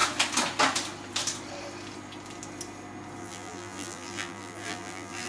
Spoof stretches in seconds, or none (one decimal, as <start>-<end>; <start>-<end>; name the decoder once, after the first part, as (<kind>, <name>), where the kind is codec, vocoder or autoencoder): 3.2-5.3 (vocoder, BigVGAN v2)